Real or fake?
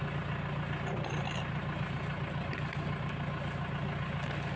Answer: real